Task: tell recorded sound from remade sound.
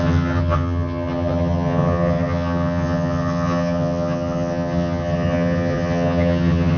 remade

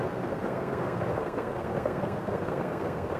remade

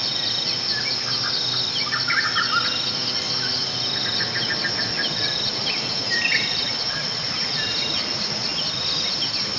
recorded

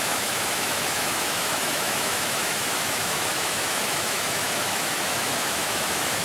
remade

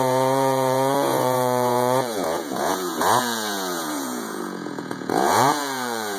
remade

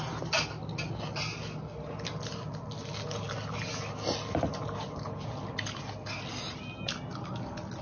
recorded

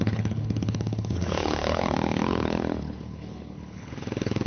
remade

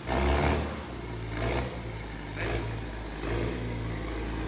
recorded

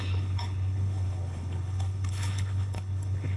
remade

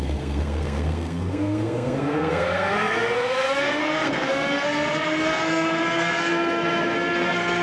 remade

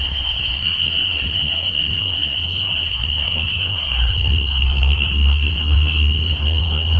remade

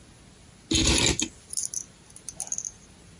recorded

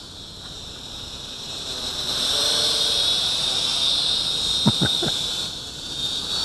remade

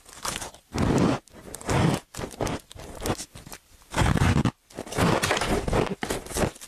recorded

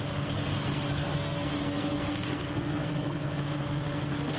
remade